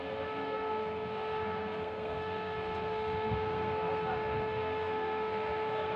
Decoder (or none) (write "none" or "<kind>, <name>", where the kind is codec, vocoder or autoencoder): codec, SNAC